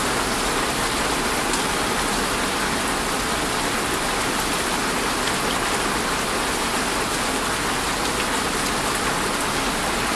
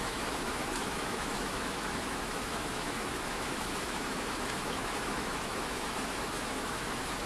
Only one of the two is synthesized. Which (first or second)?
second